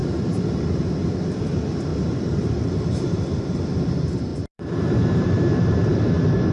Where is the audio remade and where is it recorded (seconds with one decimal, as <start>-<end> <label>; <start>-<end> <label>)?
0.0-1.9 recorded; 1.9-3.2 remade; 3.2-4.3 recorded; 4.3-6.5 remade